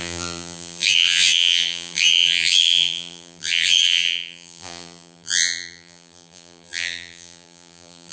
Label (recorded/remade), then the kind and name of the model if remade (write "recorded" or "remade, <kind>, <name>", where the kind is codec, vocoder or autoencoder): remade, vocoder, BigVGAN v2